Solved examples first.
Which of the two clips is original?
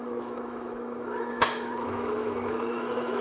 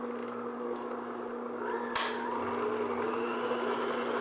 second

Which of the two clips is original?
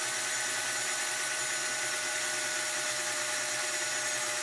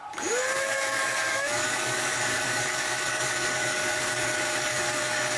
first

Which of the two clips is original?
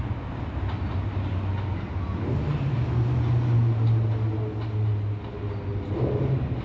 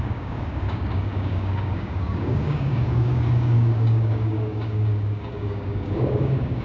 first